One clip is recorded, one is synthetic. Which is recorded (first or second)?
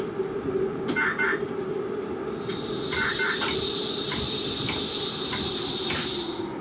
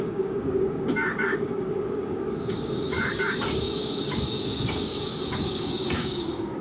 first